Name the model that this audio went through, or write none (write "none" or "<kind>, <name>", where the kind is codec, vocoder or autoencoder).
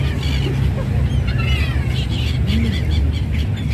none